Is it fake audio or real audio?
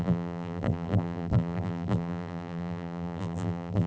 fake